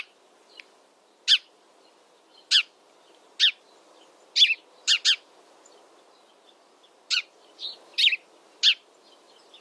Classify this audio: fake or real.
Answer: real